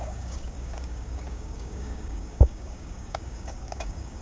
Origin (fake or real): fake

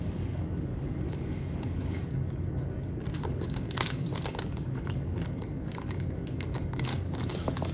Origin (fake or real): fake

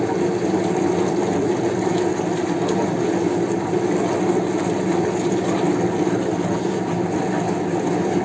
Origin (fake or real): real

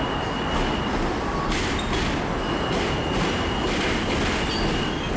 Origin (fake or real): real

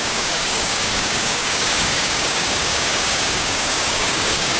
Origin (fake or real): fake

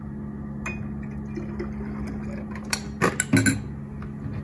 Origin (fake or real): real